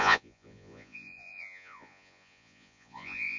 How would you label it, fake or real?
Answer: fake